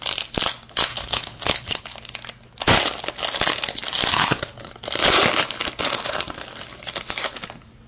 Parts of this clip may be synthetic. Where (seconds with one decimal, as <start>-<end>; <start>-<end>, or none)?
0.9-1.8; 4.1-4.7